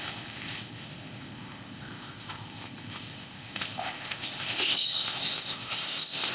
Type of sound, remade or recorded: remade